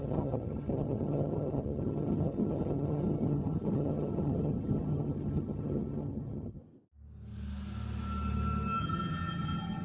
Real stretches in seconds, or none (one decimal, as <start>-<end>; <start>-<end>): 6.6-8.8